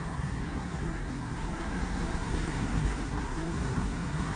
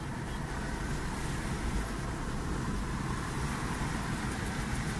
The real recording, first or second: second